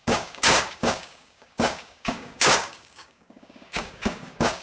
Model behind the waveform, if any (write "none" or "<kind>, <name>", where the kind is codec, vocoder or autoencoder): codec, DAC